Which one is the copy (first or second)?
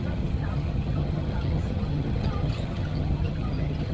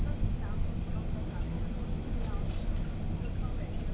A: first